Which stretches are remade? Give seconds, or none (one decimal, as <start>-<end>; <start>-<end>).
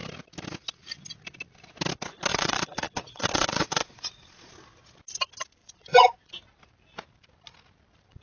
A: 2.3-4.5; 5.6-6.3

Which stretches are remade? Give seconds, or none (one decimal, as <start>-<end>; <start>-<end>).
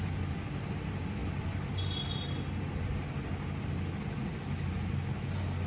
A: none